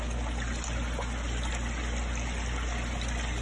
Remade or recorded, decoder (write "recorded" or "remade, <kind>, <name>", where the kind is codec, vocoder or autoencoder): recorded